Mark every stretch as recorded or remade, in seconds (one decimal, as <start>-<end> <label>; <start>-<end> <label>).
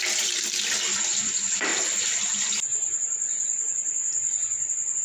0.0-0.6 remade; 0.6-5.0 recorded